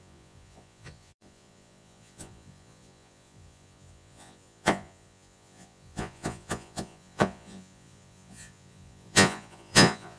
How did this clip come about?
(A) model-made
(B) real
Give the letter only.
A